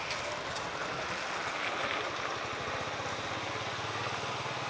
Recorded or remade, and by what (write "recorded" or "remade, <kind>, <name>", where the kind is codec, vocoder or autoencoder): recorded